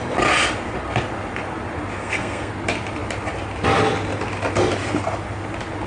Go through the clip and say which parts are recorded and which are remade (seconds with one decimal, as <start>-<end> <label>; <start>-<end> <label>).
0.0-1.9 recorded; 1.9-2.5 remade; 2.5-5.9 recorded